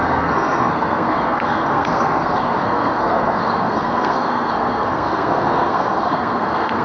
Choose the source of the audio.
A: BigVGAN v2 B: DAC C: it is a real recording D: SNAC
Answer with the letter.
D